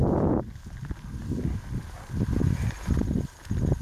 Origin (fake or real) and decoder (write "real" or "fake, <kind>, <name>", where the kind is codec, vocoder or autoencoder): real